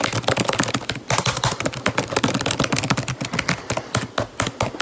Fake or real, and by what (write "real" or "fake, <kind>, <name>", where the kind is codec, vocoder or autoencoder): real